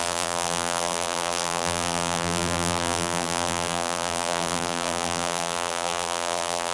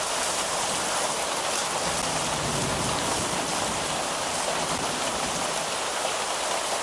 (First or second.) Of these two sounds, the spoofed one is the first